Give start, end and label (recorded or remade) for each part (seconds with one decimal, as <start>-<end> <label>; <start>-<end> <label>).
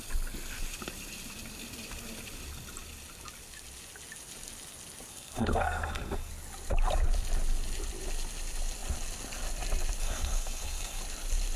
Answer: 0.0-5.1 recorded; 5.1-6.3 remade; 6.3-10.0 recorded; 10.0-11.0 remade; 11.0-11.6 recorded